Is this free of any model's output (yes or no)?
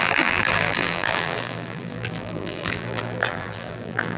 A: no